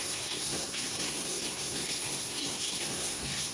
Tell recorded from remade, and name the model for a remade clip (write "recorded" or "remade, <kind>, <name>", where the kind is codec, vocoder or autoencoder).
remade, codec, SNAC